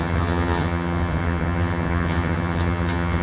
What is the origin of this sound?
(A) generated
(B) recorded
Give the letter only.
A